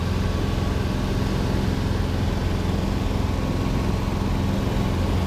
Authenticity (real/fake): real